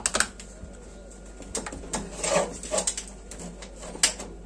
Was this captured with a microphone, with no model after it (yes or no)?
yes